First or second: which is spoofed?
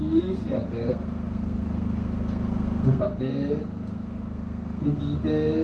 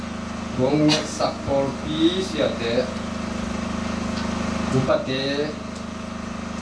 first